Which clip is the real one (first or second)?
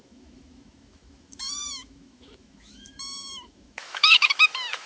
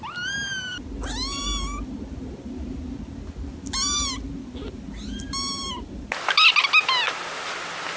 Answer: second